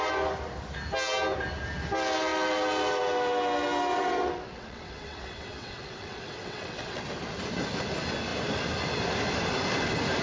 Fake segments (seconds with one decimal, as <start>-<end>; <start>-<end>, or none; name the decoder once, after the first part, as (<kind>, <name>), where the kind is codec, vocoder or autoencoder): 3.9-7.0 (vocoder, WaveNeXt)

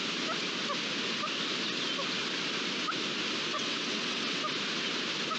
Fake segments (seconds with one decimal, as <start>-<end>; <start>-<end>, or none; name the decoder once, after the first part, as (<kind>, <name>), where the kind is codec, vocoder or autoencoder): 3.5-4.4 (vocoder, WaveNeXt)